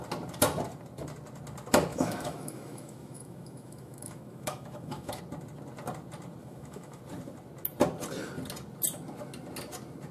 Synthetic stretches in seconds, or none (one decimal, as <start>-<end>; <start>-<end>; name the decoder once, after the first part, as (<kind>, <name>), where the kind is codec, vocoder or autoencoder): 1.9-5.2 (autoencoder, DAC-VAE); 6.4-7.0